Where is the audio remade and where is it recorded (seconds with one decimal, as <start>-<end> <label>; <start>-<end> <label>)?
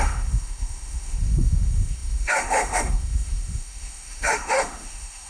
0.0-5.3 remade